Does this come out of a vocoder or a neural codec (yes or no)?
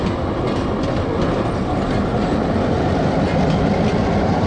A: no